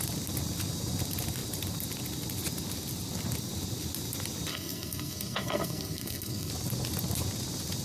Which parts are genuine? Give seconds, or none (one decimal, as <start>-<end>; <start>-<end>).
0.0-4.5; 6.5-7.8